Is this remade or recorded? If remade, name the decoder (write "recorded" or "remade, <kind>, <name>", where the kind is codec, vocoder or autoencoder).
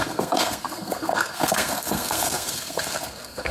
remade, codec, SNAC